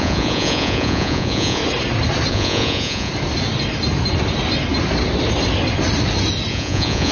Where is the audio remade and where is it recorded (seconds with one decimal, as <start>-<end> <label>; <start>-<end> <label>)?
0.0-1.6 remade; 1.6-2.3 recorded; 2.3-3.1 remade; 3.1-6.5 recorded; 6.5-7.1 remade